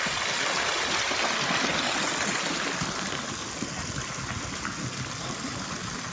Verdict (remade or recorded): recorded